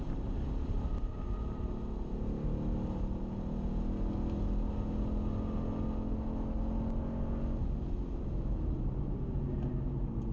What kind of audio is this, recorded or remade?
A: recorded